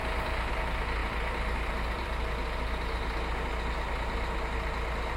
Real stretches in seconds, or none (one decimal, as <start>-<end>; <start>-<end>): 0.5-1.0; 2.2-5.2